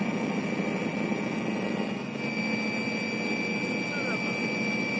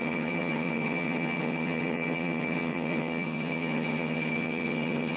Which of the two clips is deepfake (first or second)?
second